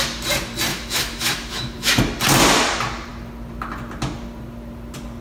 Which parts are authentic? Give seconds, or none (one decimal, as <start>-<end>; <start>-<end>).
0.0-0.7; 2.0-5.2